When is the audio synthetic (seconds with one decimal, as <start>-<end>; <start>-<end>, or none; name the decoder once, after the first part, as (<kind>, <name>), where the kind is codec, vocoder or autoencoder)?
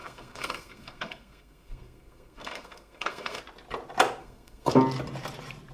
0.0-3.4 (codec, SNAC); 4.2-4.7